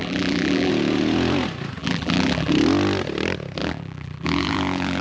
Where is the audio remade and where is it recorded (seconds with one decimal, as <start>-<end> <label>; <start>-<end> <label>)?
0.0-0.7 remade; 0.7-1.8 recorded; 1.8-2.5 remade; 2.5-3.6 recorded; 3.6-5.0 remade